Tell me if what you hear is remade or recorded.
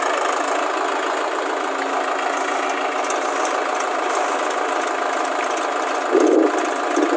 recorded